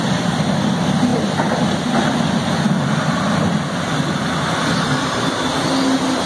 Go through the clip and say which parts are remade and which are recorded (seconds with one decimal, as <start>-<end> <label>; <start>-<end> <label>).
0.0-6.3 recorded